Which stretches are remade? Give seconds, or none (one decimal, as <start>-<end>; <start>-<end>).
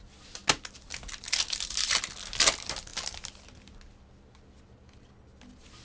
none